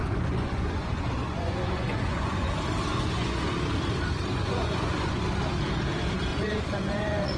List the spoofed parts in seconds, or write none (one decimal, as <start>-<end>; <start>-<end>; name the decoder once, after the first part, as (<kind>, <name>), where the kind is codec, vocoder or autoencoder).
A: 0.0-2.5 (vocoder, Vocos); 2.9-3.4; 4.3-5.2; 6.3-7.4